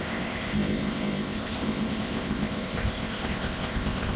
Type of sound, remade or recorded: remade